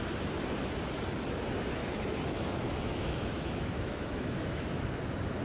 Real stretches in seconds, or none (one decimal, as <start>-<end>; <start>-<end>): 0.0-1.8; 5.0-5.4

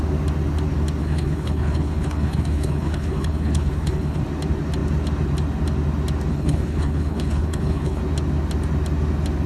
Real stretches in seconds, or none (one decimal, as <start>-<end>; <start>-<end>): 0.0-1.0; 4.2-6.3; 8.0-9.5

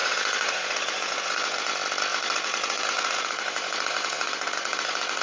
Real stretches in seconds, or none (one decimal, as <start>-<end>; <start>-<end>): 1.7-2.1